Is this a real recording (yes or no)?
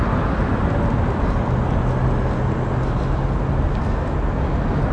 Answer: yes